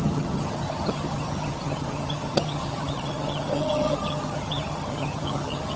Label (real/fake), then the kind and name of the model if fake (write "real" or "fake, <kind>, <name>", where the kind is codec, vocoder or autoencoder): fake, vocoder, HiFi-GAN